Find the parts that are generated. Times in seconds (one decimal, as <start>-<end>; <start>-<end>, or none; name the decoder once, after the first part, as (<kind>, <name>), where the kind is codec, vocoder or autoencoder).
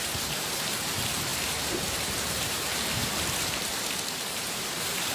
0.0-5.1 (vocoder, BigVGAN v2)